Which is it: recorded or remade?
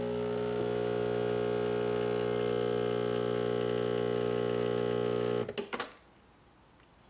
recorded